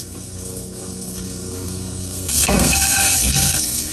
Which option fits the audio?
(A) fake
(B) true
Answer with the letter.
A